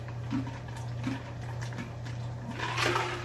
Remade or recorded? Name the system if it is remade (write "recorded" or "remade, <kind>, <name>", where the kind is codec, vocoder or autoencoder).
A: recorded